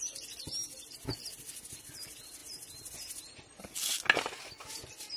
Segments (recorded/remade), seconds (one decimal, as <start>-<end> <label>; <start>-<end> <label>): 0.0-5.2 recorded